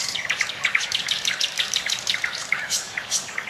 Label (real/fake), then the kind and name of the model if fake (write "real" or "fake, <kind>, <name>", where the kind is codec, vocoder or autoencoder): fake, codec, DAC